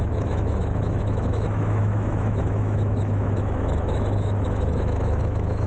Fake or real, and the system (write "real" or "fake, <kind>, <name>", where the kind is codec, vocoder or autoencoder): fake, autoencoder, DAC-VAE